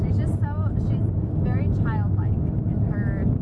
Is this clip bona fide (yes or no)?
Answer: yes